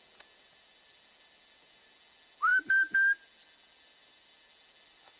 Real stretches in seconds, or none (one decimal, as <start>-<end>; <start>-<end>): 0.0-5.2